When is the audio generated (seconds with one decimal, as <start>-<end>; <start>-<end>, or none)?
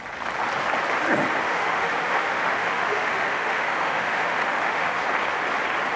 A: 1.4-5.0